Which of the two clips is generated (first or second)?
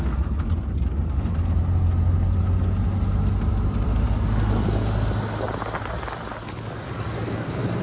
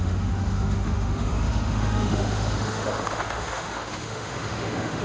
second